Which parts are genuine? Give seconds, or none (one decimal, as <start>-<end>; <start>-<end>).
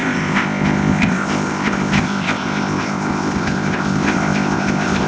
none